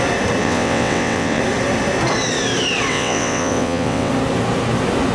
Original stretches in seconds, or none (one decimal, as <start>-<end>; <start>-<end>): 0.0-0.4; 1.4-2.9; 4.1-5.1